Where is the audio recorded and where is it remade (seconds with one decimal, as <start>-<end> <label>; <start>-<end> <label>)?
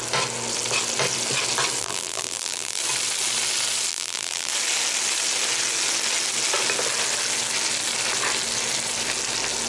0.0-1.8 recorded; 1.8-2.8 remade; 2.8-3.9 recorded; 3.9-4.5 remade; 4.5-9.7 recorded